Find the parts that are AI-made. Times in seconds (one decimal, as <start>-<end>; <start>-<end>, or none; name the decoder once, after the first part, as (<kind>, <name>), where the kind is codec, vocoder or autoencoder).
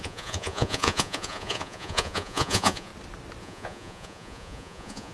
0.0-2.9 (vocoder, Vocos); 3.4-5.1